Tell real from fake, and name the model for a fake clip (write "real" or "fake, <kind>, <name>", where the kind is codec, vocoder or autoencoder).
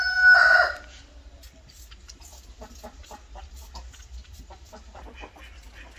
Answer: real